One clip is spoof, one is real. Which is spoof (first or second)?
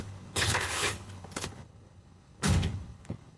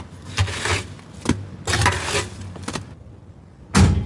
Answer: first